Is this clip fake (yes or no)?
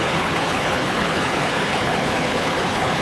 yes